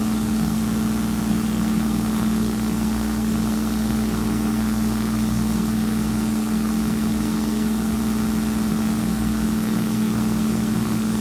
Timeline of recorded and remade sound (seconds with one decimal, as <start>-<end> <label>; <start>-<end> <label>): 0.0-0.6 remade; 0.6-1.3 recorded; 1.3-8.0 remade; 8.0-8.7 recorded; 8.7-11.2 remade